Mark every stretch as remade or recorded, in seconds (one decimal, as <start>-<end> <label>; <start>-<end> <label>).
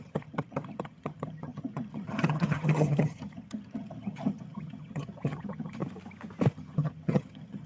0.0-5.8 remade; 5.8-6.5 recorded; 6.5-7.7 remade